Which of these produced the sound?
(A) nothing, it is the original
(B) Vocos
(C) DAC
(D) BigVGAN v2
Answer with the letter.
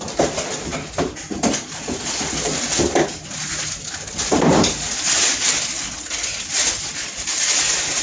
A